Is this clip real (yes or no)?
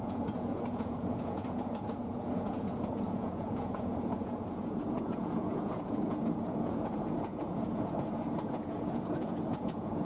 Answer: no